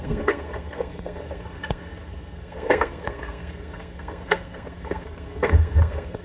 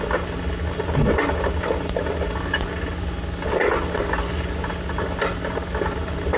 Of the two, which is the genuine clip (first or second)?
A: second